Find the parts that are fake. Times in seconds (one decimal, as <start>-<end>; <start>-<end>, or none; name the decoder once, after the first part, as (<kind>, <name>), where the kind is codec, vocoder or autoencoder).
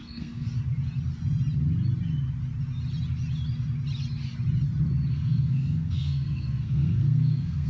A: 0.0-0.5 (codec, SNAC); 5.1-7.7